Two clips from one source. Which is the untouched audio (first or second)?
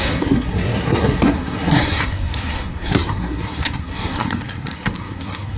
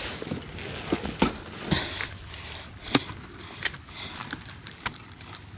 second